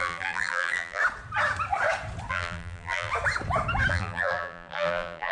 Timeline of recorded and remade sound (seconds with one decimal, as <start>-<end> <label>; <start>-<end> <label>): 0.0-1.0 remade; 1.0-2.3 recorded; 2.3-3.1 remade; 3.1-3.9 recorded; 3.9-5.3 remade